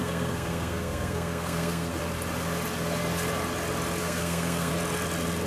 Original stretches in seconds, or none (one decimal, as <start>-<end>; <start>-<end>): 2.0-4.0; 4.7-5.5